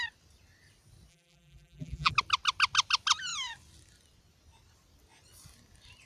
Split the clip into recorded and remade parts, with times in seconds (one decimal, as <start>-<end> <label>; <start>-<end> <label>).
0.0-1.1 recorded; 1.1-2.1 remade; 2.1-6.1 recorded